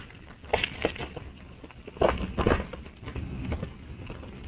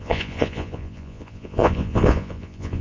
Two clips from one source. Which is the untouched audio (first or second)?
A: first